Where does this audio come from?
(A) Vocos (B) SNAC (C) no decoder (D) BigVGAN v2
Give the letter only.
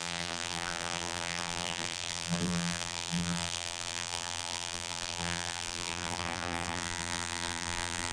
D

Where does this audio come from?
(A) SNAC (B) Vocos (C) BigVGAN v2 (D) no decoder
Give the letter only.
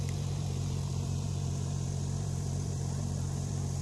C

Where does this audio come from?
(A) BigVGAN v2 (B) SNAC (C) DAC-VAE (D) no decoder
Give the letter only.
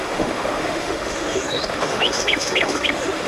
C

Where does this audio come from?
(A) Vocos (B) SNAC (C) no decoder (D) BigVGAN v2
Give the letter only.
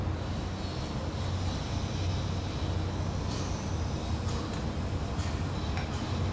C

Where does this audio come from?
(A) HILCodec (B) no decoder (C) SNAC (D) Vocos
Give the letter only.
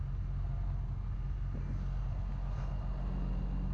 B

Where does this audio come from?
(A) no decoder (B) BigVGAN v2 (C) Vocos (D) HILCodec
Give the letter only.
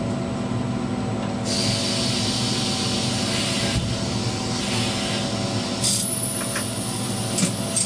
A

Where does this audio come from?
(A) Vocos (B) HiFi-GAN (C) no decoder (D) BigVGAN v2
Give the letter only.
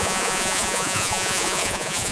A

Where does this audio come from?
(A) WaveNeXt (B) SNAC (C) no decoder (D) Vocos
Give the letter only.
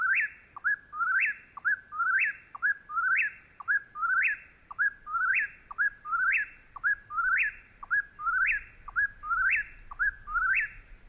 C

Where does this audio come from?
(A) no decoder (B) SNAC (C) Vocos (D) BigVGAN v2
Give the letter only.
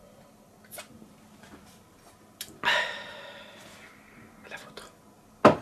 A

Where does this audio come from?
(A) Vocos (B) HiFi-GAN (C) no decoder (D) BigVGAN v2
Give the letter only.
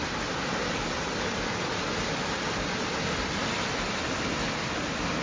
C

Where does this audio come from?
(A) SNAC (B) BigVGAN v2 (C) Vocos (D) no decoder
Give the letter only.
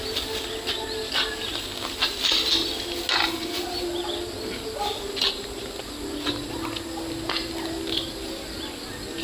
D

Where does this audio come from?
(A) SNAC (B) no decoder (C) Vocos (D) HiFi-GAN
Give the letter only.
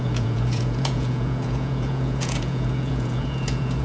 C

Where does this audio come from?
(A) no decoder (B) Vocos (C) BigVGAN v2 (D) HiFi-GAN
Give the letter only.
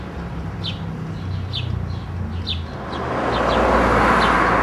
A